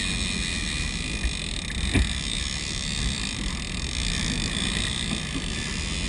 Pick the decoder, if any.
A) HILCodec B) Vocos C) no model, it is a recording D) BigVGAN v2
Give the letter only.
C